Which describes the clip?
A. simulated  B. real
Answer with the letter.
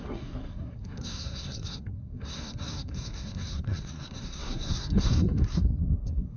A